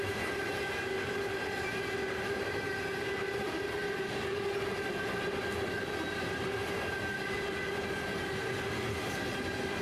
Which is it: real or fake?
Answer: real